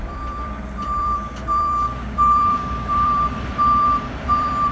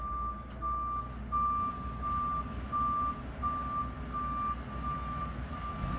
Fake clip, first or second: first